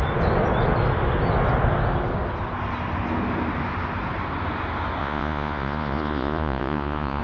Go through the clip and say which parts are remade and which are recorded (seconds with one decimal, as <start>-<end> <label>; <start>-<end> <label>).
0.0-5.0 recorded; 5.0-7.2 remade